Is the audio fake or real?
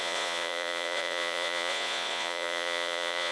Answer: fake